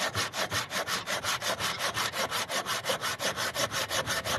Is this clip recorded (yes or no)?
no